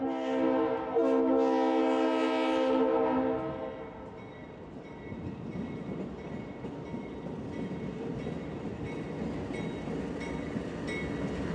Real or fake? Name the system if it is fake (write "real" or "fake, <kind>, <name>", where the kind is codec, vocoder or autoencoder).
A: real